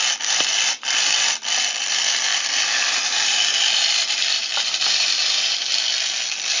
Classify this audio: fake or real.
fake